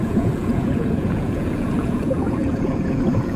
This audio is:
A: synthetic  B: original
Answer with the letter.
A